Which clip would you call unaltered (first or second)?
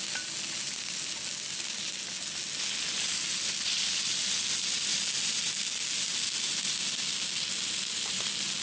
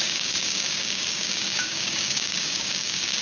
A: first